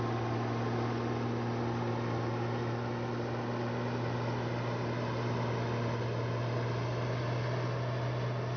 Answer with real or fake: real